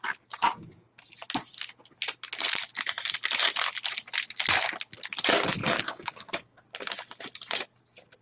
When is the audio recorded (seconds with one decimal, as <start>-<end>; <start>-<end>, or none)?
0.0-5.6; 6.6-8.2